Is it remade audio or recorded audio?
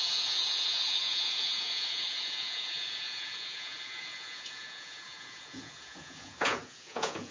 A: remade